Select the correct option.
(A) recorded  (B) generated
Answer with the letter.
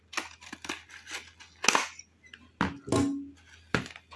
A